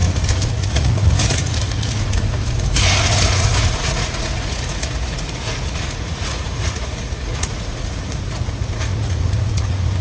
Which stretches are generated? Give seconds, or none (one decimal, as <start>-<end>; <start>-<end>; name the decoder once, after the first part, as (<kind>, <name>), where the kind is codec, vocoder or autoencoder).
0.0-10.0 (vocoder, Vocos)